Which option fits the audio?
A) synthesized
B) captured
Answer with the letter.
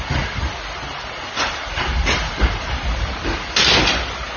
B